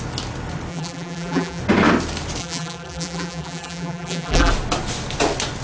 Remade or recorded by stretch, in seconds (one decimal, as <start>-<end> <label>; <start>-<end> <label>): 0.0-0.7 recorded; 0.7-1.6 remade; 1.6-2.4 recorded; 2.4-4.5 remade; 4.5-5.6 recorded